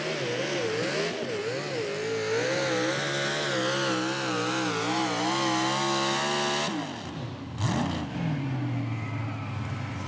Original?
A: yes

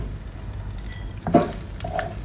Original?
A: yes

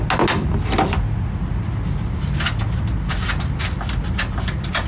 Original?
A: yes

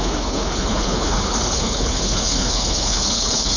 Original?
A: no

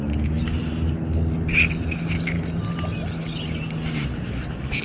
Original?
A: yes